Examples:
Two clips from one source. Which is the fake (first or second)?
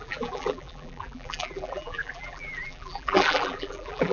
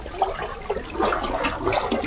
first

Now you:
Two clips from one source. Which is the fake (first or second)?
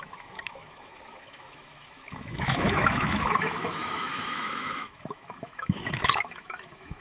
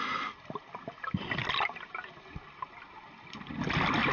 first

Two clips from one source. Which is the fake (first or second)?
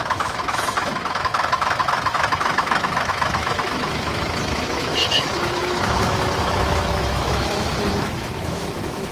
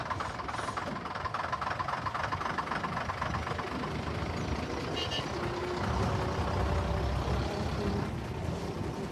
first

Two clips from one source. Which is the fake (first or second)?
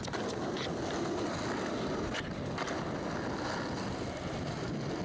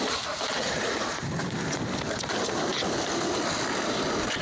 second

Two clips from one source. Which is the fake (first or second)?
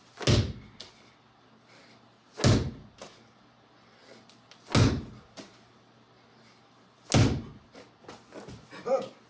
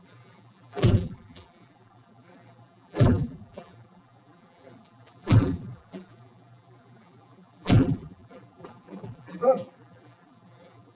second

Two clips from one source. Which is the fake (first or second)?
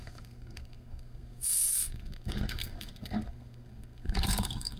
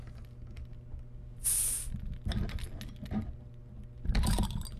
first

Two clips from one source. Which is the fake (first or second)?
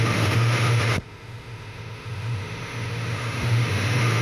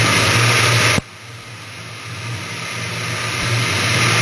first